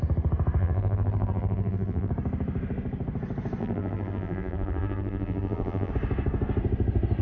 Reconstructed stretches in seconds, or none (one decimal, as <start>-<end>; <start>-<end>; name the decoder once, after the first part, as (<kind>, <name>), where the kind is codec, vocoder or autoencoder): 0.6-2.1 (vocoder, BigVGAN v2); 3.6-5.9